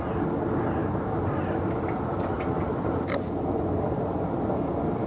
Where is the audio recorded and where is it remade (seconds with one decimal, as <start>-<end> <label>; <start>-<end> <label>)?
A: 0.0-5.1 recorded